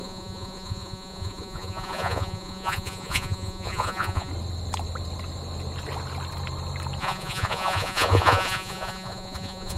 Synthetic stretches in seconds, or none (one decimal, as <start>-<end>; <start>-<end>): 0.0-4.3; 7.0-9.8